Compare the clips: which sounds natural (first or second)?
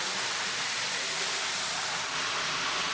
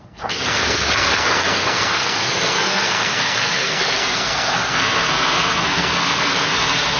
first